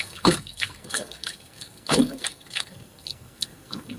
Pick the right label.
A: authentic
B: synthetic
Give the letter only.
B